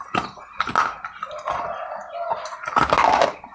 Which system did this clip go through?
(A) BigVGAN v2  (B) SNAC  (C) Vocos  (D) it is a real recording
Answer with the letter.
D